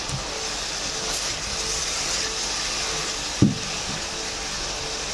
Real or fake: real